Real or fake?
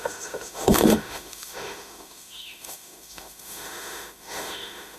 fake